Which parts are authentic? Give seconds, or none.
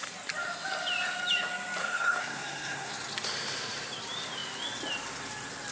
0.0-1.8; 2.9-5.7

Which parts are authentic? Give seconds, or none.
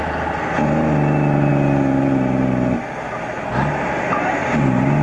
0.0-5.0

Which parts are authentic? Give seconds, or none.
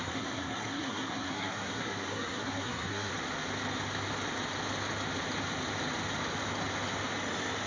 3.1-7.7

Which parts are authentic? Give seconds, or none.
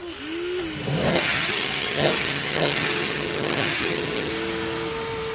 0.0-1.1; 4.3-5.3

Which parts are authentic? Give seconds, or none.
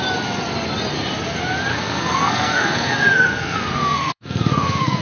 0.0-1.7